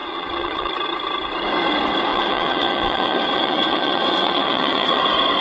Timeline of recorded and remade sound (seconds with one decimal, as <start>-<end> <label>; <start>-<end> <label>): 0.0-0.7 remade; 0.7-2.1 recorded; 2.1-5.0 remade; 5.0-5.4 recorded